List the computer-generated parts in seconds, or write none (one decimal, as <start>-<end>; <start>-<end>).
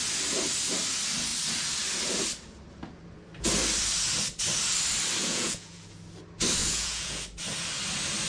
5.2-6.0; 6.6-7.2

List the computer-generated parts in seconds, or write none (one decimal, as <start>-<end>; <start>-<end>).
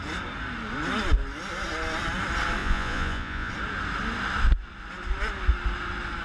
2.6-3.5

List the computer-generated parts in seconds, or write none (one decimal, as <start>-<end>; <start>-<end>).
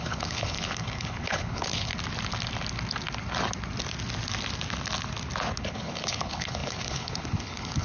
0.0-1.9; 5.6-7.8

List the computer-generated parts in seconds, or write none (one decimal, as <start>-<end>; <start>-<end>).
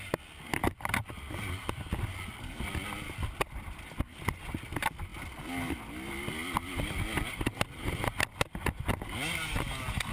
none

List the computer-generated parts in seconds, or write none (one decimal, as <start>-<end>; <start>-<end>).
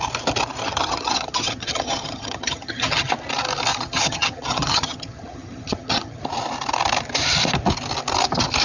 0.6-3.1; 3.7-6.2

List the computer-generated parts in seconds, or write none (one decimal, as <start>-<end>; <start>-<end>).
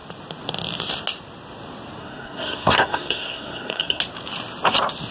2.0-4.0